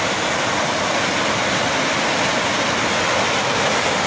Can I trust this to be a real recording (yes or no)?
yes